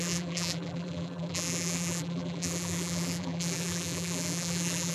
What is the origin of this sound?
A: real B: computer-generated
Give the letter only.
B